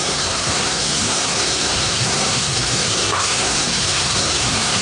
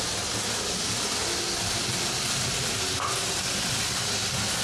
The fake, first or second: first